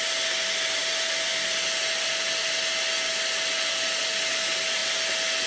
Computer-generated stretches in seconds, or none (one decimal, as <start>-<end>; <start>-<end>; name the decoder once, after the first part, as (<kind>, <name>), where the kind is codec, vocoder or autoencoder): none